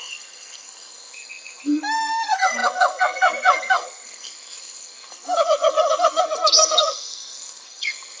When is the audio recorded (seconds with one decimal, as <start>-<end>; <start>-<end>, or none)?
none